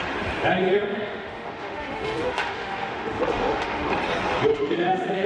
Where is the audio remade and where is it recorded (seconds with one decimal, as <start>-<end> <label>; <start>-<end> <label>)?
0.0-0.7 recorded; 0.7-3.9 remade; 3.9-4.5 recorded; 4.5-5.3 remade